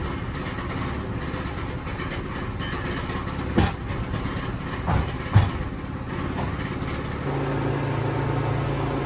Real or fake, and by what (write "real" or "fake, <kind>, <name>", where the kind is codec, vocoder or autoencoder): real